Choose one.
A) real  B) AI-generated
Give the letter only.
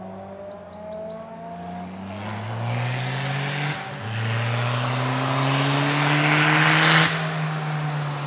A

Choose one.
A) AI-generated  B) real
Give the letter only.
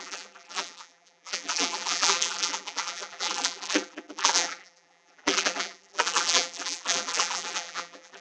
A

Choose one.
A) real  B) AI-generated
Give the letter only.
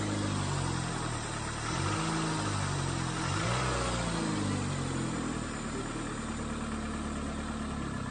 A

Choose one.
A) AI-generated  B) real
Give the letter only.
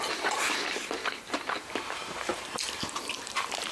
A